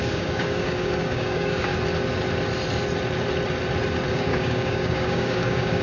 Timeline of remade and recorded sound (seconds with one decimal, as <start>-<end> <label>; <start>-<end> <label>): 0.0-1.7 remade; 1.7-4.1 recorded; 4.1-5.8 remade